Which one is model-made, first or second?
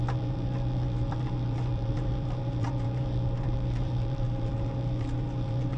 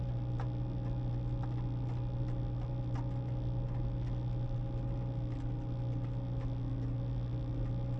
first